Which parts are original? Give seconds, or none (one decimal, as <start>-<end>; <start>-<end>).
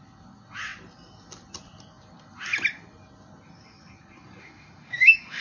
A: 0.0-4.4